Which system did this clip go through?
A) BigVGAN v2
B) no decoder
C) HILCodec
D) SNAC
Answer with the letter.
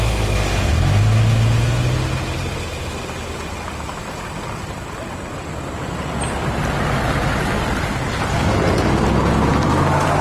B